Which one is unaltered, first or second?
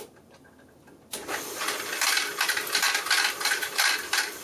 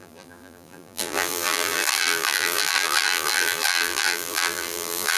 first